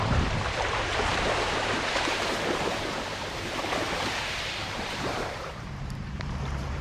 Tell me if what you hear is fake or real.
fake